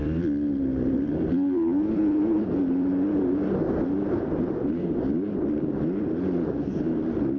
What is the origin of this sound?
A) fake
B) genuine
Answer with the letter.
A